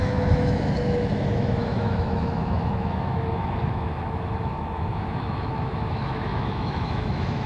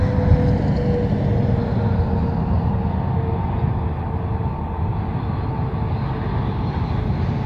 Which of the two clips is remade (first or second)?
first